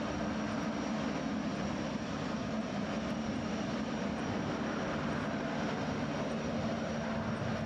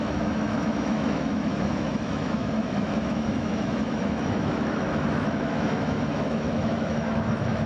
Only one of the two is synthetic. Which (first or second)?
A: second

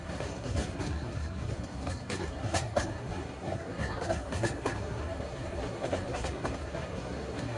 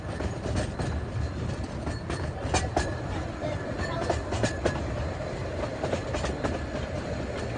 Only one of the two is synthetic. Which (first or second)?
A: first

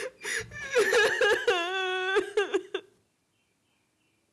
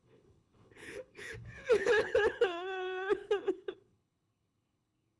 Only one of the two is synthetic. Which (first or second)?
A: second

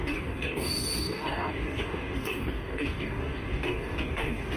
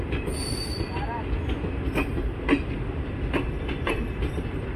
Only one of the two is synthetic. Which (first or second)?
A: first